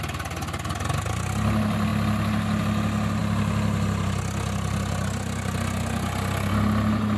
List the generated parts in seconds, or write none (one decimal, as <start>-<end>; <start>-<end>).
none